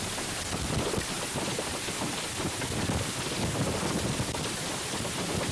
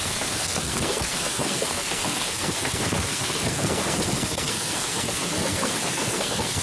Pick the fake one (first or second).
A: second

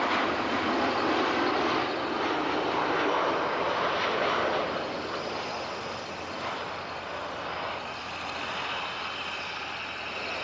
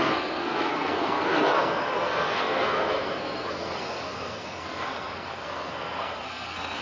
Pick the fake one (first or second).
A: second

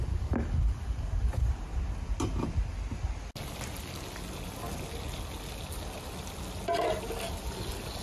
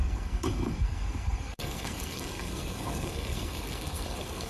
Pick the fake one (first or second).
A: second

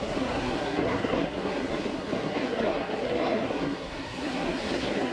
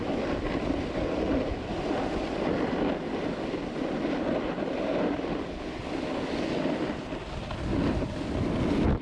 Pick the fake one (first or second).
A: first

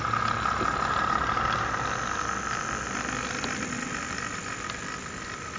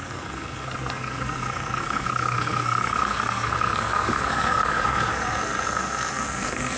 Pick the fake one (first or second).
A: second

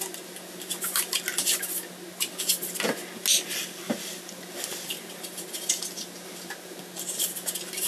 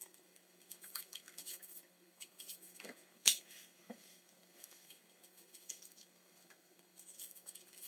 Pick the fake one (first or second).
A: second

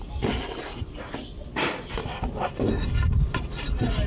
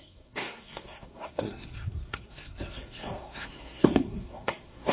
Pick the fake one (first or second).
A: second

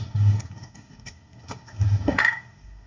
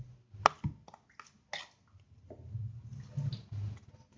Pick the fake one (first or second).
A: first